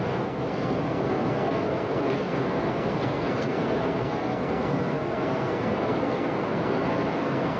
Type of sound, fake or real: fake